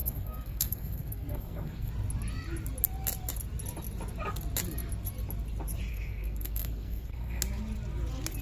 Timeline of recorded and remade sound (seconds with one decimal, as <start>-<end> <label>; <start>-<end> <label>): 0.0-1.9 remade; 1.9-5.9 recorded; 5.9-7.4 remade; 7.4-8.4 recorded